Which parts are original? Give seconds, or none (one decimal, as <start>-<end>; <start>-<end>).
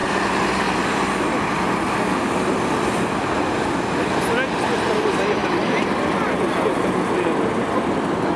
0.0-8.4